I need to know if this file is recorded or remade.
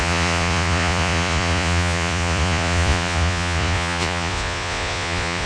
remade